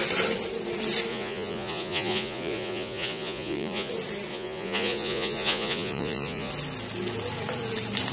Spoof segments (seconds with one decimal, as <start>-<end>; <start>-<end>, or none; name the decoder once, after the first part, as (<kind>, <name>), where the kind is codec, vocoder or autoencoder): 1.1-3.9 (vocoder, Vocos); 4.3-6.5